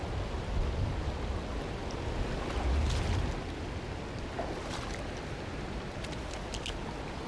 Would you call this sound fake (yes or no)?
no